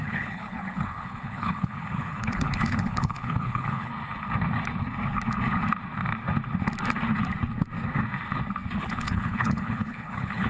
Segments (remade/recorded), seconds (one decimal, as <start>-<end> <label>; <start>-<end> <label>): 0.0-3.9 remade; 3.9-8.8 recorded; 8.8-10.5 remade

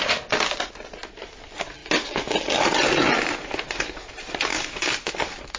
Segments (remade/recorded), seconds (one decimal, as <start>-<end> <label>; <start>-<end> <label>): 0.0-5.6 recorded

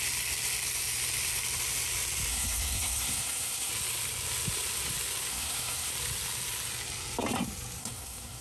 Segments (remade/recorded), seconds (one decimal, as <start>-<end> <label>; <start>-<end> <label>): 0.0-2.3 recorded; 2.3-3.7 remade; 3.7-5.3 recorded; 5.3-5.9 remade; 5.9-7.8 recorded; 7.8-8.4 remade

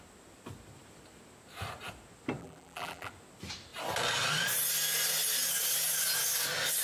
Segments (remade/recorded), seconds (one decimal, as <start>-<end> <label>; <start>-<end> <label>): 0.0-2.4 recorded; 2.4-3.1 remade; 3.1-6.8 recorded

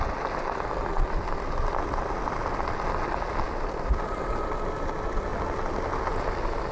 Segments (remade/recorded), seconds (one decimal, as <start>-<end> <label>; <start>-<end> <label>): 0.0-6.7 recorded

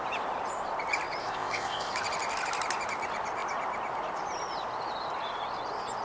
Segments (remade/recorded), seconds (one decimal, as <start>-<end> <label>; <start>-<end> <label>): 0.0-1.2 recorded; 1.2-1.9 remade; 1.9-6.0 recorded